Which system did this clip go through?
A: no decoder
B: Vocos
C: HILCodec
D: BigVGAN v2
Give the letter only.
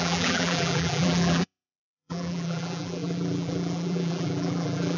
D